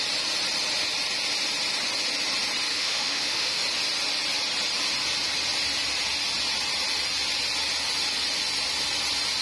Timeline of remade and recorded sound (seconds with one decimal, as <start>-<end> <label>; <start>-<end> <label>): 0.0-2.7 recorded; 2.7-3.6 remade; 3.6-9.4 recorded